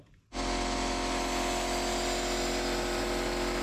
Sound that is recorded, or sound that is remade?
recorded